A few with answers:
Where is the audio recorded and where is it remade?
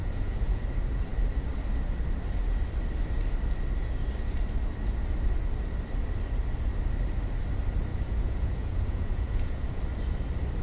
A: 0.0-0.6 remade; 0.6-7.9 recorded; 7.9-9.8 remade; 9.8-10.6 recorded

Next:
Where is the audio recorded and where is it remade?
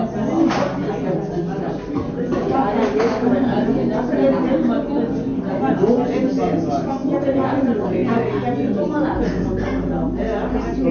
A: 0.0-10.9 recorded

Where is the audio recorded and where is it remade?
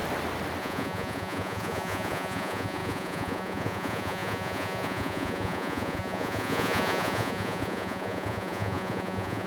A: 0.0-0.6 recorded; 0.6-9.5 remade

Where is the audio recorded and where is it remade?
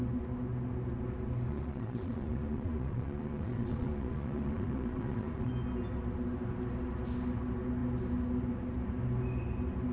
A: 0.0-1.5 recorded; 1.5-5.5 remade; 5.5-9.9 recorded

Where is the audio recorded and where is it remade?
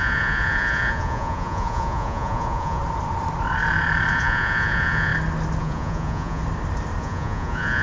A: 0.0-2.8 remade; 2.8-4.1 recorded; 4.1-5.1 remade; 5.1-5.6 recorded; 5.6-6.4 remade; 6.4-7.0 recorded; 7.0-7.8 remade